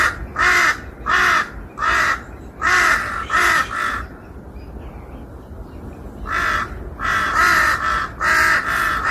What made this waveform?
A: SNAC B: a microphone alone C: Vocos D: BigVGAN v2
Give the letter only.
B